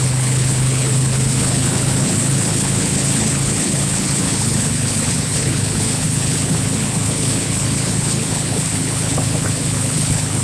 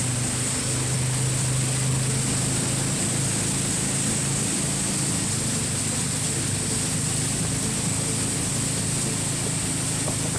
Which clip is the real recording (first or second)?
second